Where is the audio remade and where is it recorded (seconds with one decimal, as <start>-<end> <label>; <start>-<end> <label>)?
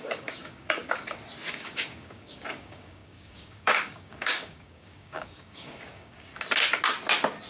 0.0-0.8 remade; 0.8-1.5 recorded; 1.5-6.3 remade; 6.3-7.5 recorded